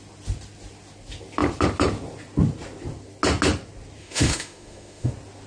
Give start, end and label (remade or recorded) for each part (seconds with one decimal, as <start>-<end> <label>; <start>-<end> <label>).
0.0-4.0 recorded; 4.0-5.1 remade; 5.1-5.5 recorded